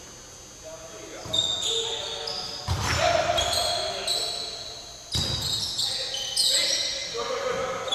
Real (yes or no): yes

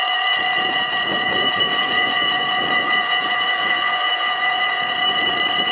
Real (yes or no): no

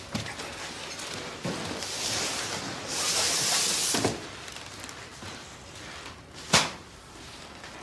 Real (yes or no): yes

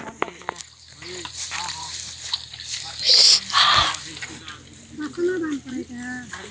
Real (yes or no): yes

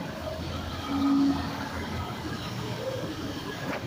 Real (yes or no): no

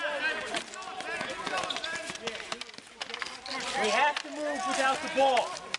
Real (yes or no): yes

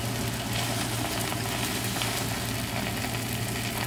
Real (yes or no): yes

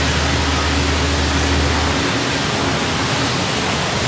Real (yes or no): yes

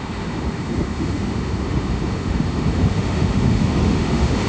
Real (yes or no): no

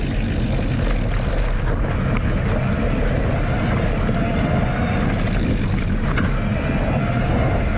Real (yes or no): yes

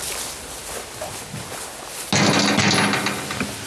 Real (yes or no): yes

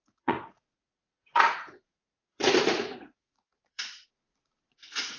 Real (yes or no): no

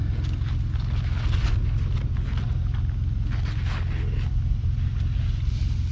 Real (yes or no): yes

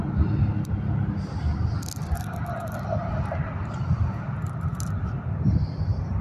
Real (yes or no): yes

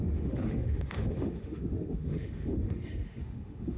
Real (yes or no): no